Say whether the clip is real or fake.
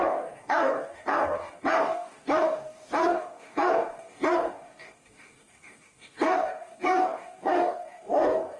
fake